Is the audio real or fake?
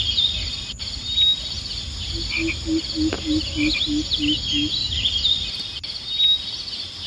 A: real